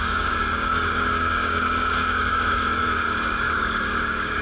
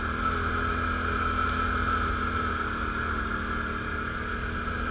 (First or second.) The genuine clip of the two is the second